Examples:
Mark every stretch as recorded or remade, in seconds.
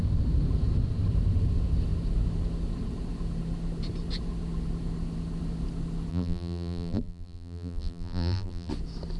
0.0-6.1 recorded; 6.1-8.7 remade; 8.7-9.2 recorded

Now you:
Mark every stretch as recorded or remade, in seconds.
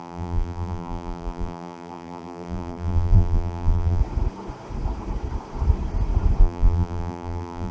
0.0-4.0 remade; 4.0-6.4 recorded; 6.4-7.7 remade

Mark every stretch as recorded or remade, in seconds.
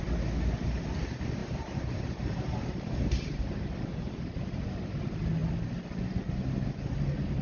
0.0-1.4 recorded; 1.4-4.2 remade; 4.2-7.4 recorded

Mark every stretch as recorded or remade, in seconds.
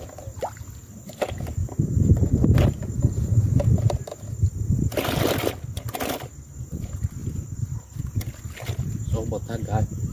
0.0-1.6 recorded; 1.6-3.6 remade; 3.6-10.1 recorded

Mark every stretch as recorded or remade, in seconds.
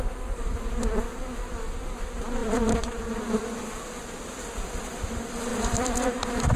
0.0-0.5 recorded; 0.5-1.0 remade; 1.0-2.4 recorded; 2.4-4.8 remade; 4.8-5.5 recorded; 5.5-6.6 remade